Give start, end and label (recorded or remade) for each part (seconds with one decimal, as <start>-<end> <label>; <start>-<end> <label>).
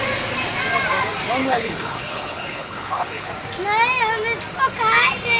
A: 0.0-1.4 recorded; 1.4-3.3 remade; 3.3-5.4 recorded